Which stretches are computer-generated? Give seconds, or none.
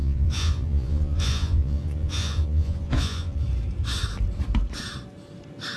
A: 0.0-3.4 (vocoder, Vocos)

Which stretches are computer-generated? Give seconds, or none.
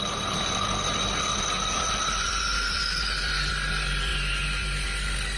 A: none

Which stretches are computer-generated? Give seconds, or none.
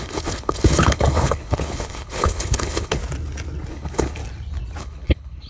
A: 0.0-3.0 (codec, HILCodec); 3.7-4.2; 4.8-5.5